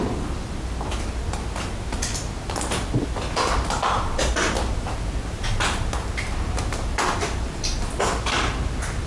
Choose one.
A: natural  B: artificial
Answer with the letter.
A